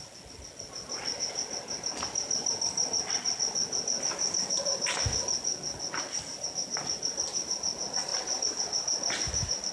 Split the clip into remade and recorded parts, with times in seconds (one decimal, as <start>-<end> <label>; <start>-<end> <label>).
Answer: 0.0-8.1 recorded; 8.1-9.7 remade